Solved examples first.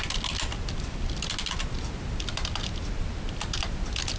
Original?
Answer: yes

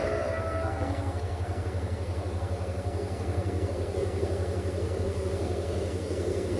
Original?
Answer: no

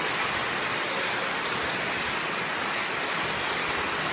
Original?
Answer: yes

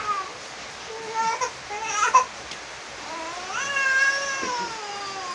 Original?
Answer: yes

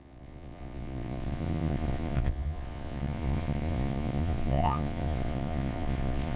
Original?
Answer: no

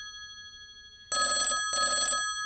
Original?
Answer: yes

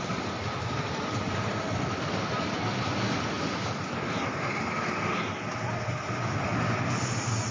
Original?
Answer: yes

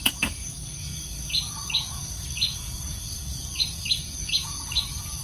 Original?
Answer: no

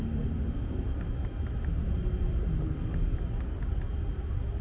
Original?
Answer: yes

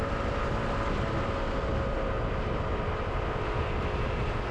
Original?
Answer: yes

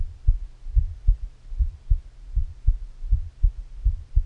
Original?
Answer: yes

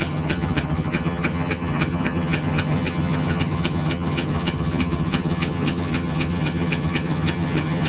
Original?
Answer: no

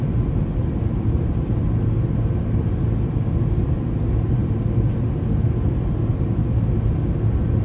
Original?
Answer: yes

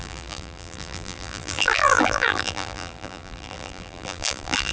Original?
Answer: no